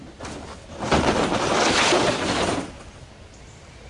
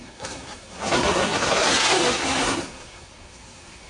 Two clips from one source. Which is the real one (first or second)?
first